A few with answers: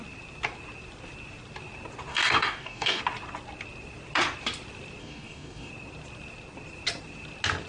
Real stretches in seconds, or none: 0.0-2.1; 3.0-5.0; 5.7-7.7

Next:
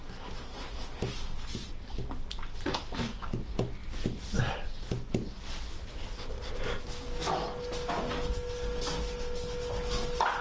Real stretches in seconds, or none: 0.0-10.4

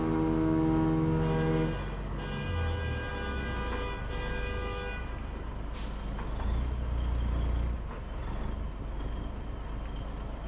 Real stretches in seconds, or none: 0.0-10.5

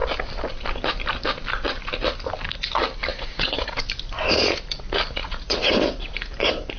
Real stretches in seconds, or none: 0.0-3.1; 3.8-5.2; 5.7-6.8

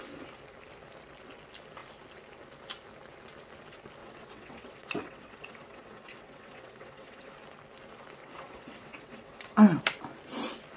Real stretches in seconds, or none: 0.0-4.0; 7.3-8.2; 9.8-10.8

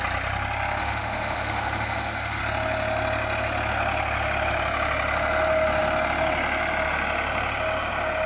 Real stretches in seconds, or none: 0.0-0.8; 2.4-8.3

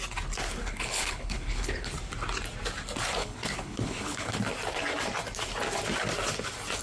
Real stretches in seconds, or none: 0.0-0.6; 1.9-3.2; 4.4-6.8

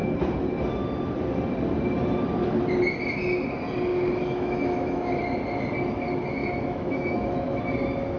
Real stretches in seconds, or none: 0.0-3.9; 5.2-6.4; 7.6-8.2